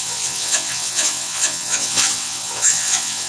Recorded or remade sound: remade